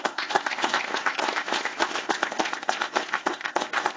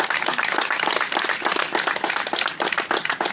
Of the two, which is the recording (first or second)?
second